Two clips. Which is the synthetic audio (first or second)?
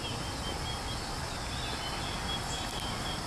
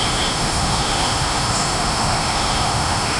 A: second